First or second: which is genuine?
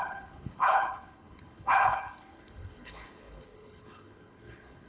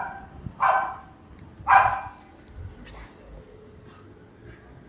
second